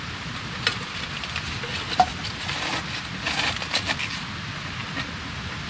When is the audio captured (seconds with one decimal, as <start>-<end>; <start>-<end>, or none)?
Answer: 0.0-5.7